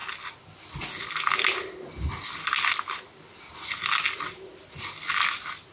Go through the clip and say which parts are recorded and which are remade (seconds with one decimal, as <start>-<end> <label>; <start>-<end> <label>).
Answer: 0.0-5.7 recorded